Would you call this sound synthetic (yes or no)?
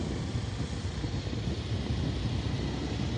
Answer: no